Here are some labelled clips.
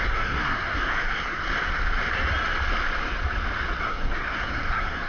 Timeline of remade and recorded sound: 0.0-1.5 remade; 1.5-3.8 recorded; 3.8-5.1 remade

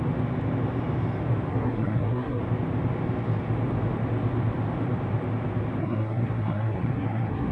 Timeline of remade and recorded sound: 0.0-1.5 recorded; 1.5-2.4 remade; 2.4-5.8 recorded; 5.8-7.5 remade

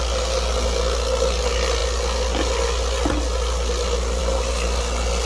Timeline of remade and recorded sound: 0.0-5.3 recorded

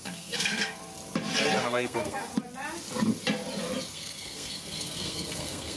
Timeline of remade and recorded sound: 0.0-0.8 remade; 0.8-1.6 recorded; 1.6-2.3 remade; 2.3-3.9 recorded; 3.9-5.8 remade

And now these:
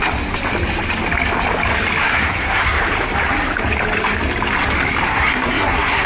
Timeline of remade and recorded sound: 0.0-2.0 recorded; 2.0-2.8 remade; 2.8-5.1 recorded; 5.1-6.1 remade

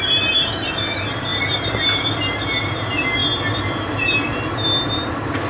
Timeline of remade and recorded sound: 0.0-5.5 recorded

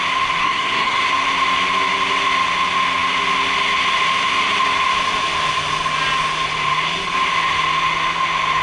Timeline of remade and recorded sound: 0.0-0.4 recorded; 0.4-1.1 remade; 1.1-8.6 recorded